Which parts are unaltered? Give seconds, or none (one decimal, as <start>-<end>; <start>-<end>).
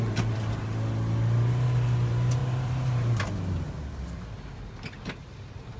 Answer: 0.0-2.4; 3.2-5.8